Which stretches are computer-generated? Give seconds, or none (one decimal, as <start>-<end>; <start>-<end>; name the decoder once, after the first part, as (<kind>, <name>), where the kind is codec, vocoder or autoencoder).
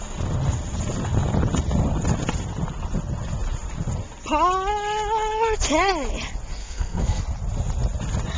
6.6-7.2 (codec, SNAC)